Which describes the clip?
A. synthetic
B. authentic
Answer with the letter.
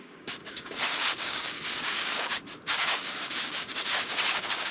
A